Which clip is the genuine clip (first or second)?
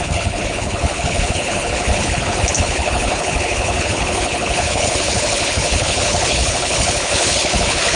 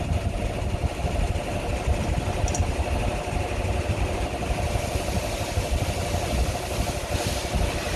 second